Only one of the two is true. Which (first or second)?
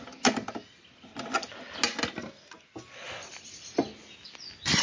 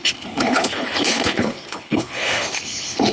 first